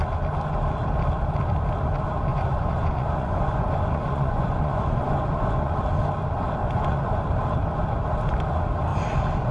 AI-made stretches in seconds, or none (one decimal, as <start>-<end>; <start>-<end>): 2.3-5.8; 6.6-7.2